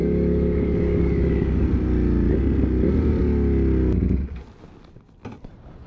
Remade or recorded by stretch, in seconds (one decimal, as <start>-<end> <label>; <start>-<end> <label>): 0.0-1.6 remade; 1.6-5.9 recorded